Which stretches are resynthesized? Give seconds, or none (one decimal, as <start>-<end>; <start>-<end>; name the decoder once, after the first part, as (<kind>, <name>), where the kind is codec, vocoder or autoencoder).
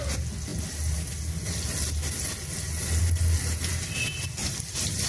4.4-5.1 (vocoder, BigVGAN v2)